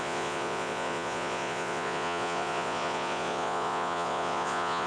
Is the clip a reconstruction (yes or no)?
yes